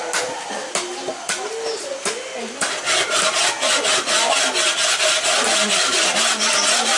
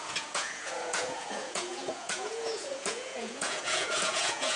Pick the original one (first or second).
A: first